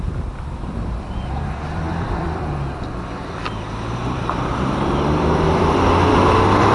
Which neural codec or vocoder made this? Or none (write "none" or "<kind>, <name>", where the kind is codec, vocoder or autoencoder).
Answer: vocoder, BigVGAN v2